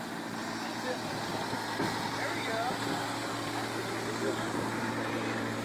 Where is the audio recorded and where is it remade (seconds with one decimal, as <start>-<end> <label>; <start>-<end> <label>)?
0.0-5.6 recorded